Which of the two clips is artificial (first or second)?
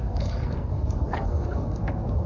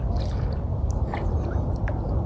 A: first